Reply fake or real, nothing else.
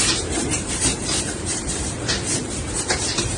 fake